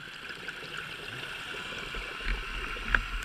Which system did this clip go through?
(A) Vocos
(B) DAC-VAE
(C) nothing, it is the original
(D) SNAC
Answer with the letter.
C